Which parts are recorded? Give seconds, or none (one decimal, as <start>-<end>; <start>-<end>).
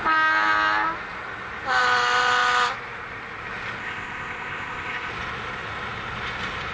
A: 0.0-3.8; 5.1-6.7